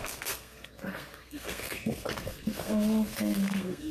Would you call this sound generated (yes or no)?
yes